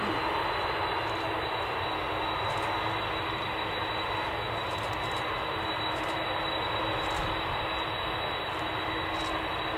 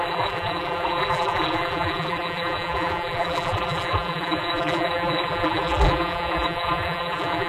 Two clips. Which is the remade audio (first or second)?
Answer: second